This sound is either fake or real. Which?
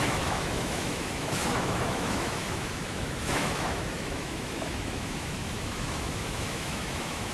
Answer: fake